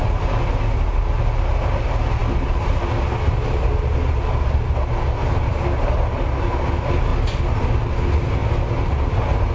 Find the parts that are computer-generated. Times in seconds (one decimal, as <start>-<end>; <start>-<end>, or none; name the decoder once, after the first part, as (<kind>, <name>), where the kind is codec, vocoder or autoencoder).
none